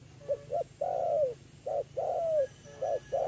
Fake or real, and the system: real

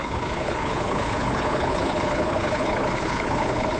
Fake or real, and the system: fake, codec, HILCodec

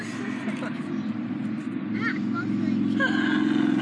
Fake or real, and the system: real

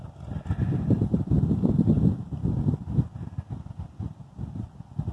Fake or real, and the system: real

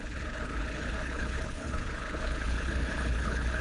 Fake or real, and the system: fake, codec, HILCodec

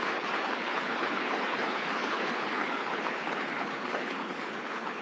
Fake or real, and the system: fake, codec, HILCodec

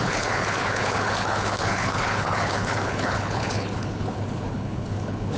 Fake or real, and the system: fake, codec, HILCodec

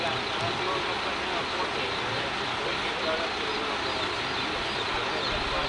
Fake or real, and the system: real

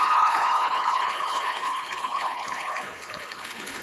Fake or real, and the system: fake, codec, HILCodec